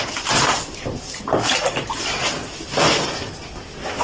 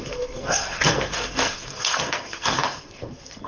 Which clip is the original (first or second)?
first